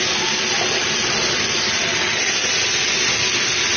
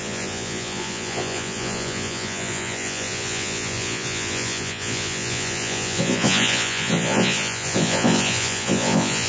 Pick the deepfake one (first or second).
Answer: second